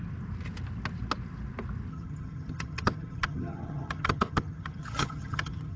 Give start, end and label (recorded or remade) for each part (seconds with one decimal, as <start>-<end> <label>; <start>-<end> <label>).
0.0-1.9 recorded; 1.9-5.8 remade